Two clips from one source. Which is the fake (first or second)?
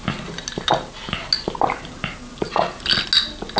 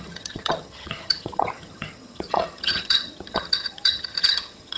second